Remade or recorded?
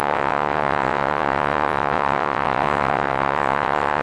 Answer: remade